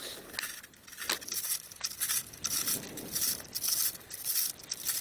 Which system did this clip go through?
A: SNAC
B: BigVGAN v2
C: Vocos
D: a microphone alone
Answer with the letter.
D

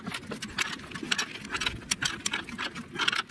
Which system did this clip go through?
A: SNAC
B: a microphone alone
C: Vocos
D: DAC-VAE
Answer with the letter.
B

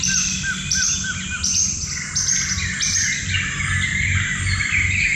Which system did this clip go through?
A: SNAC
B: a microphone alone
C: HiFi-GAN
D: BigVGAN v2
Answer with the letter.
B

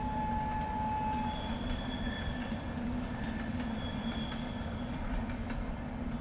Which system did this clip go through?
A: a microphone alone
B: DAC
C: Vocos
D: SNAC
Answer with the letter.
A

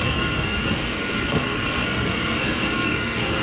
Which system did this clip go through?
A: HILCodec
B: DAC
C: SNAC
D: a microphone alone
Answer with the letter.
C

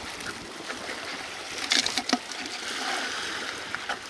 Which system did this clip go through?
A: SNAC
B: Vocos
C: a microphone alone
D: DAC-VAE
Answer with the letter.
C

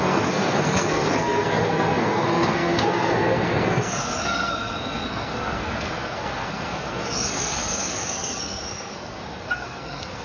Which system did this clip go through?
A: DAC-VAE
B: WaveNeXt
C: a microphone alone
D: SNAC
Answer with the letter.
D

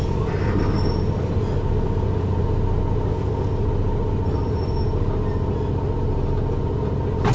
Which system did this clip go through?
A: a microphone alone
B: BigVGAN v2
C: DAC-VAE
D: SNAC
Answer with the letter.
A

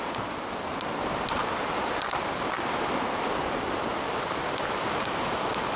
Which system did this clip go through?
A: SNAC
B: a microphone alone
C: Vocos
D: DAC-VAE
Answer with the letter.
B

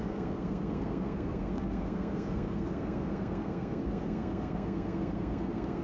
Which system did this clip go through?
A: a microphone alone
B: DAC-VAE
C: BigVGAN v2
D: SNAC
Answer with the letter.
D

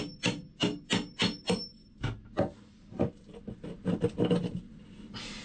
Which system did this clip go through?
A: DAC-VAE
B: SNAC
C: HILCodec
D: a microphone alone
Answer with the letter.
D